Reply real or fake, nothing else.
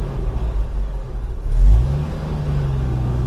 fake